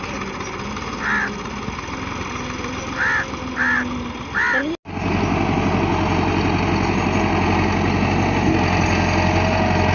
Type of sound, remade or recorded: recorded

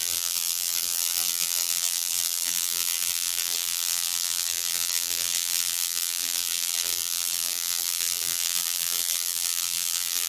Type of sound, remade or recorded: remade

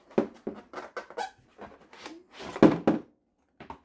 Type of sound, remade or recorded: recorded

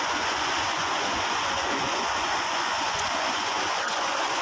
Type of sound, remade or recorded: remade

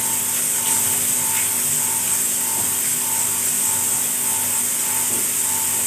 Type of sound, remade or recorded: recorded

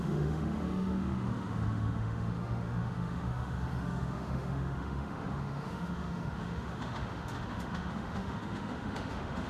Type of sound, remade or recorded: remade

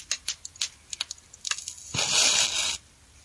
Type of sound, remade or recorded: recorded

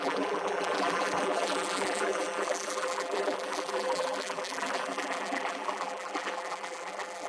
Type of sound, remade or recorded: remade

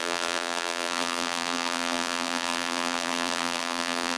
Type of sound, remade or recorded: remade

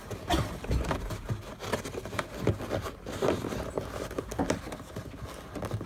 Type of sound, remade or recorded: recorded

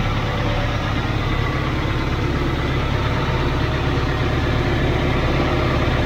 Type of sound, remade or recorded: recorded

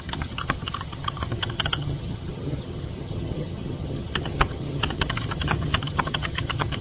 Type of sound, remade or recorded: remade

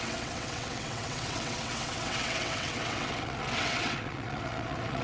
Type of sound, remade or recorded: remade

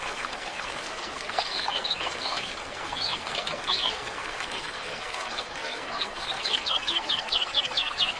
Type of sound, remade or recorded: remade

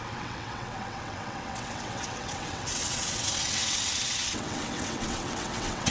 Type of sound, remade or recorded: remade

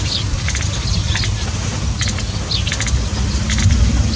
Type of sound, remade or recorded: recorded